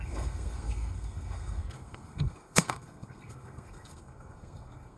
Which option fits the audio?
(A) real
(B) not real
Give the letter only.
B